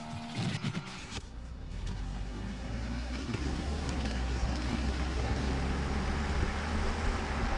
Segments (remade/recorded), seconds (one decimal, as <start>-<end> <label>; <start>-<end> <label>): 0.0-1.0 recorded; 1.0-5.5 remade; 5.5-7.6 recorded